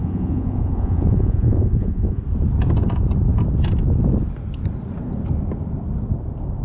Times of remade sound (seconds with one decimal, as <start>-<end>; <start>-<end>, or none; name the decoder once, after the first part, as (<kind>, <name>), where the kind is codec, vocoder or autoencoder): 0.0-2.2 (vocoder, Vocos)